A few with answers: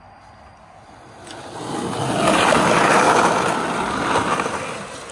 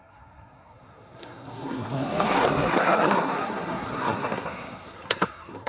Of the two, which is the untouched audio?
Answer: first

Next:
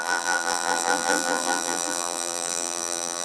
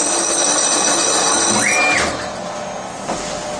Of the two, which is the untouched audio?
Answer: second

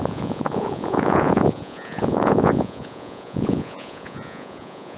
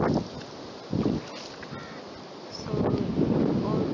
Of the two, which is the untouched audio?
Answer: second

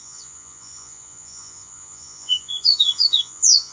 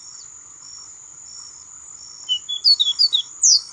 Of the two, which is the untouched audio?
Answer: second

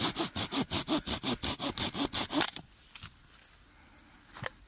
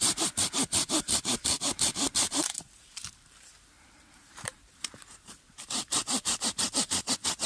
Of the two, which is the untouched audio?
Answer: first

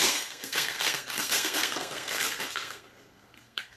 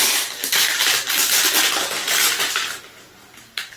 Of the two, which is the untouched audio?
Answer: second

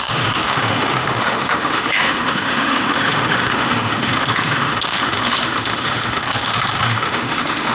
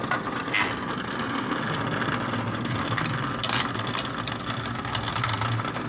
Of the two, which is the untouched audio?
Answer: second